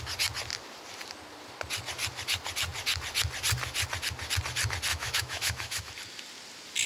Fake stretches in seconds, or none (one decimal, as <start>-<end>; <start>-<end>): 4.9-5.9